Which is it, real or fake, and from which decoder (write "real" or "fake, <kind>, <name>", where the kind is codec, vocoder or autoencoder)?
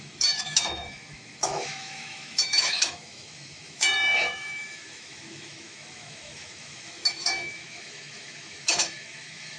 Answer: fake, autoencoder, DAC-VAE